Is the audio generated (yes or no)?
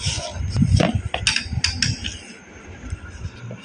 no